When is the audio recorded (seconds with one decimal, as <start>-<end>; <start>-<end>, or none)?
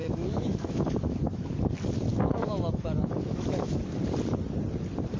1.5-2.1; 3.8-5.2